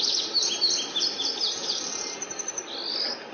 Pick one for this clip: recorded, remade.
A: recorded